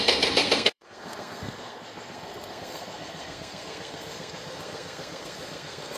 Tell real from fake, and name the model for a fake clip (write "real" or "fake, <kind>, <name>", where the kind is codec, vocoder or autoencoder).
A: fake, codec, SNAC